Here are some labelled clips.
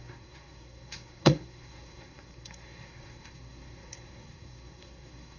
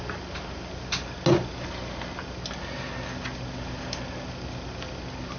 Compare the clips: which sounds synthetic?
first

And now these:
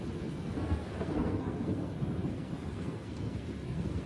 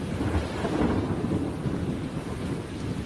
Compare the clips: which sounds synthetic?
first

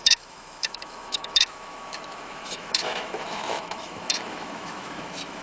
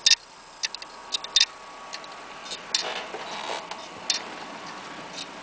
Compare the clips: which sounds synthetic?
first